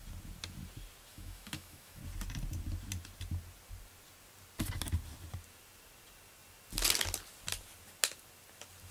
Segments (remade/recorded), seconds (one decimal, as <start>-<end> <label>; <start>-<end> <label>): 0.0-1.1 recorded; 1.1-2.0 remade; 2.0-8.9 recorded